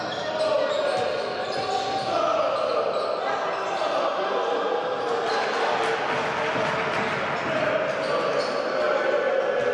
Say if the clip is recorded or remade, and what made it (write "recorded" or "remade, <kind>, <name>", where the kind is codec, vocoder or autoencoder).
recorded